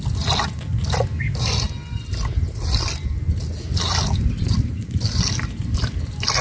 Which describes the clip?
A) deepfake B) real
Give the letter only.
B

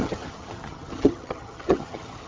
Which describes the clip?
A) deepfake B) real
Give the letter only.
A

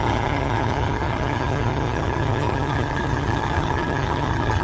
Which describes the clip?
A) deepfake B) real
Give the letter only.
A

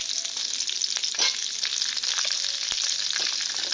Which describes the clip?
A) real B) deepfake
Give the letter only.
A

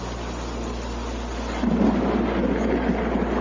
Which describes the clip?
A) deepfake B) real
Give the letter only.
B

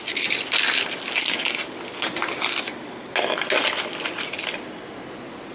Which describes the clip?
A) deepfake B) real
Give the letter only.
B